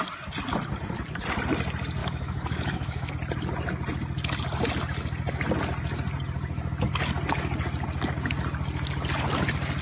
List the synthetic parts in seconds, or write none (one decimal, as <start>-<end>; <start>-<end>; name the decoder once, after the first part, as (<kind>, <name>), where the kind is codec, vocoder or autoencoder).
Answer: 2.0-3.1 (autoencoder, DAC-VAE)